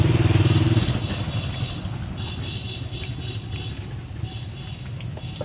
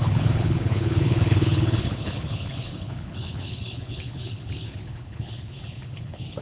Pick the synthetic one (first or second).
second